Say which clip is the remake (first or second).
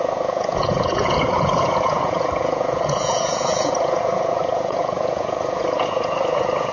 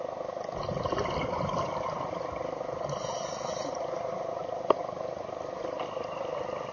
first